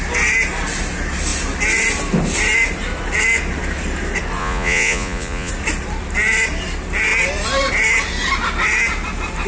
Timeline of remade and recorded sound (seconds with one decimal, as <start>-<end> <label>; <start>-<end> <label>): 0.0-4.4 recorded; 4.4-5.5 remade; 5.5-9.5 recorded